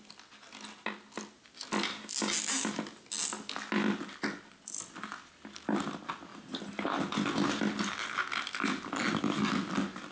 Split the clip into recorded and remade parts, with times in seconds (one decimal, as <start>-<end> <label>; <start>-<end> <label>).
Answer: 0.0-6.3 recorded; 6.3-6.8 remade; 6.8-10.1 recorded